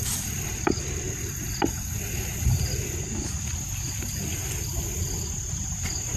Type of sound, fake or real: real